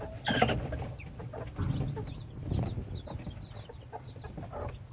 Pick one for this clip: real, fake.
real